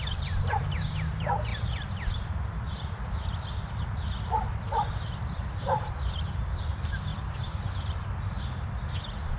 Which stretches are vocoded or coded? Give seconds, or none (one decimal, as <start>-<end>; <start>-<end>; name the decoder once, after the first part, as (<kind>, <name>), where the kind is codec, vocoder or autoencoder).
0.0-1.5 (vocoder, BigVGAN v2); 5.1-7.1